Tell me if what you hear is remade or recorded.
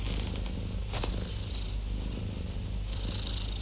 recorded